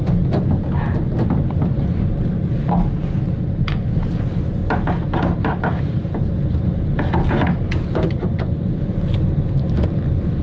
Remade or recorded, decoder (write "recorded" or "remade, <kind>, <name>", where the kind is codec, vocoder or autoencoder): recorded